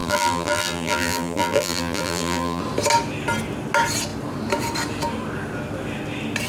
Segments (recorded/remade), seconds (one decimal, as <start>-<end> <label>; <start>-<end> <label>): 0.0-2.6 remade; 2.6-6.5 recorded